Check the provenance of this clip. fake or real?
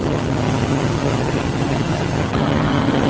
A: fake